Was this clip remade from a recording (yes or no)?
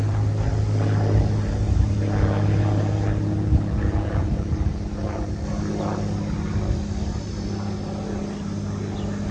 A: no